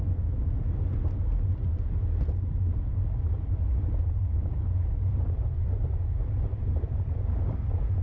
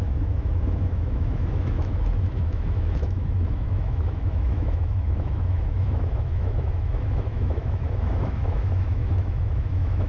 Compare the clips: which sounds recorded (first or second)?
first